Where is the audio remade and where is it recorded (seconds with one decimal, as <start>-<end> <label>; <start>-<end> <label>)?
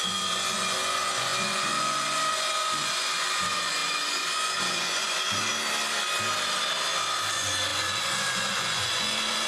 0.0-5.5 remade; 5.5-7.3 recorded; 7.3-9.5 remade